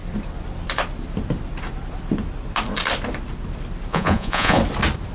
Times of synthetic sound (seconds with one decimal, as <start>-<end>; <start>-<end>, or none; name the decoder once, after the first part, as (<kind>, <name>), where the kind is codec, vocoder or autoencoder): 3.9-4.6 (vocoder, Vocos)